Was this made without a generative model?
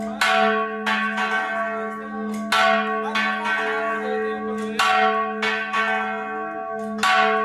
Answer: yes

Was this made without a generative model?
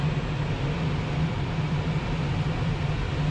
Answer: no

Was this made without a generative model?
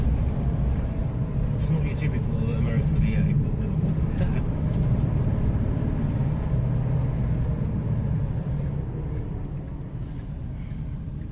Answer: yes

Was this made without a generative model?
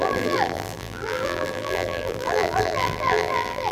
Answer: no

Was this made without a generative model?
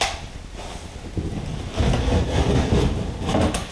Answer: yes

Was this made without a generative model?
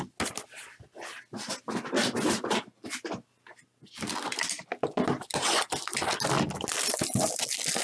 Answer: yes